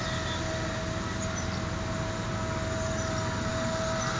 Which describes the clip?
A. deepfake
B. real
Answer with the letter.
A